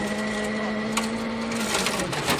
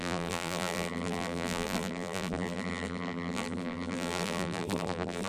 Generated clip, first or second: second